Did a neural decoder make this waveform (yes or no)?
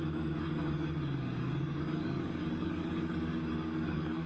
yes